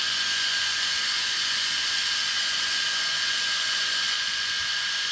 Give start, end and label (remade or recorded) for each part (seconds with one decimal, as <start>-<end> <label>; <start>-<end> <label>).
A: 0.0-5.1 remade